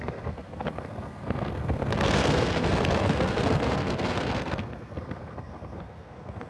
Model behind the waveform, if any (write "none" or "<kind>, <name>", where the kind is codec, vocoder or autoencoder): codec, SNAC